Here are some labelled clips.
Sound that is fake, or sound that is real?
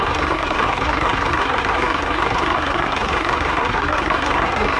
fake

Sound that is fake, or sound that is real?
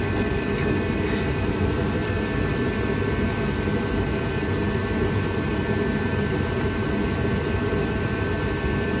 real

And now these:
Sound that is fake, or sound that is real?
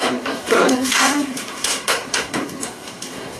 fake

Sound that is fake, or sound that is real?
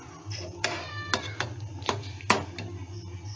real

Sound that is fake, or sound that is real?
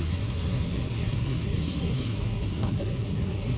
fake